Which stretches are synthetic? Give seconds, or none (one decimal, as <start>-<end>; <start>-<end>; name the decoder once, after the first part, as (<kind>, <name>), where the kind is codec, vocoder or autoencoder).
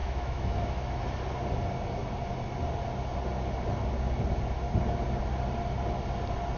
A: 0.0-1.0 (autoencoder, DAC-VAE)